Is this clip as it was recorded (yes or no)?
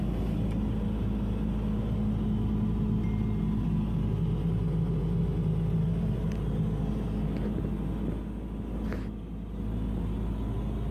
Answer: yes